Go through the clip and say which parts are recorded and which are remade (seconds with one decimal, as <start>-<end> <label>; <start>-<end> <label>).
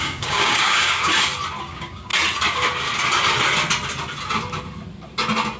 0.0-1.1 remade; 1.1-1.6 recorded; 1.6-2.1 remade; 2.1-5.6 recorded